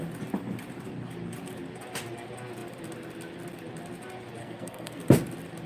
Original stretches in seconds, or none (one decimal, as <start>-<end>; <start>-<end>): 0.0-4.4; 5.0-5.7